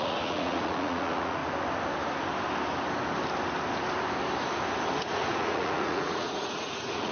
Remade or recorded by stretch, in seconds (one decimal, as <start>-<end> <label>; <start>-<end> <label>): 0.0-1.4 remade; 1.4-5.0 recorded; 5.0-7.1 remade